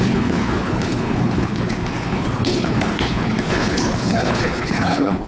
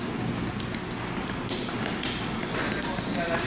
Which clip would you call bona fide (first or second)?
second